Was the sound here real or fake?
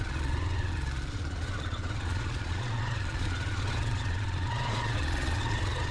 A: fake